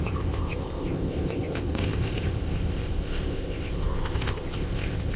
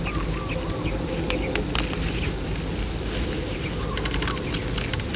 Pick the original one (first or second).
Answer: second